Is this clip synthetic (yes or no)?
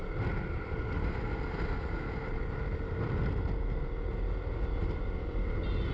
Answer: no